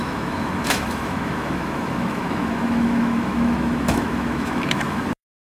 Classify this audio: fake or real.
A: fake